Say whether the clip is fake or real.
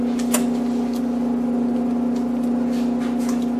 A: real